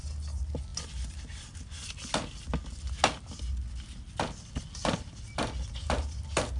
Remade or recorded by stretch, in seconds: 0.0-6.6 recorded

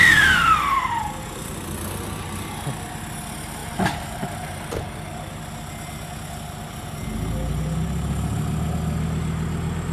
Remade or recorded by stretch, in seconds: 0.0-3.6 recorded; 3.6-4.8 remade; 4.8-9.9 recorded

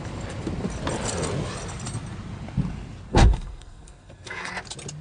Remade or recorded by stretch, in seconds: 0.0-3.1 recorded; 3.1-4.5 remade; 4.5-5.0 recorded

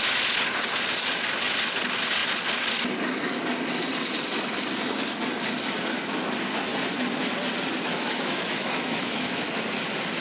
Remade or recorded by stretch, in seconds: 0.0-7.9 recorded; 7.9-9.5 remade; 9.5-10.2 recorded

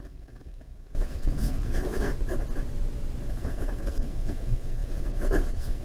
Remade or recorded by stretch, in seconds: 0.0-2.1 remade; 2.1-3.3 recorded; 3.3-5.8 remade

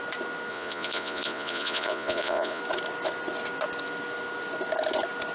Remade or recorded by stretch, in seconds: 0.0-0.5 recorded; 0.5-2.6 remade; 2.6-5.3 recorded

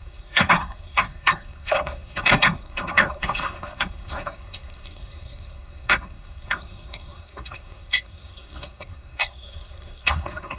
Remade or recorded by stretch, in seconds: 0.0-10.6 remade